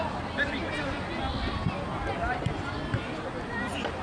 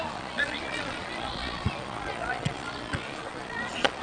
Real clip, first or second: first